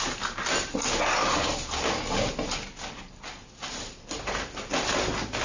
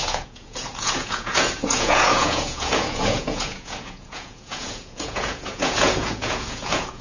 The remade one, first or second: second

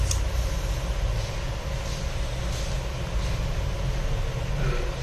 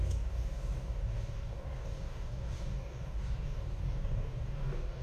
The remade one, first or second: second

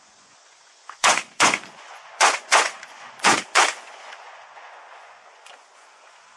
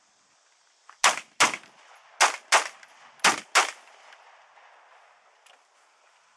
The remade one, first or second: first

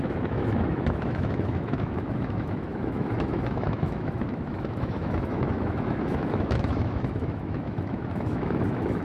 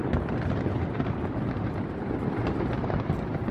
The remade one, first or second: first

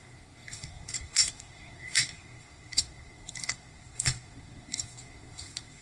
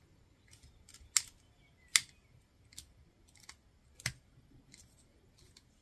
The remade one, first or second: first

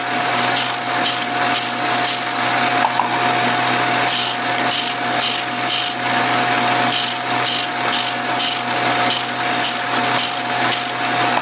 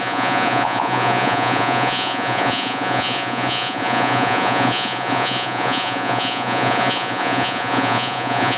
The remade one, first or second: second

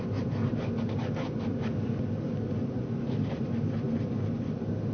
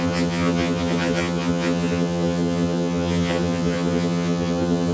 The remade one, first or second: second